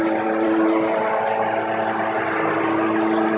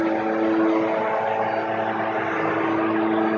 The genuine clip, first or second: second